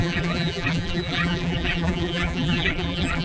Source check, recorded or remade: remade